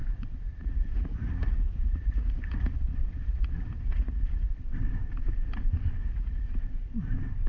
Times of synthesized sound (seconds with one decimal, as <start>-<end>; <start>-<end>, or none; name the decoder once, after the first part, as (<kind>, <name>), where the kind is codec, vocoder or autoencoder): 0.0-4.5 (vocoder, Vocos); 6.0-6.6